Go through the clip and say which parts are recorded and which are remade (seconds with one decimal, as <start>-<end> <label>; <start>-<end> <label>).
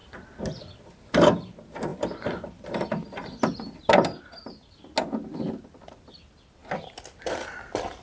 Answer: 0.0-8.0 recorded